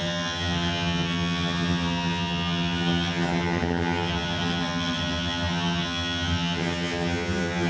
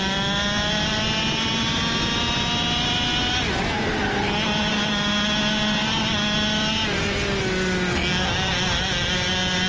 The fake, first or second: first